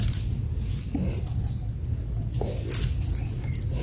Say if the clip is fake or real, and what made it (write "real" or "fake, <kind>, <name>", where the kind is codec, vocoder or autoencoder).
real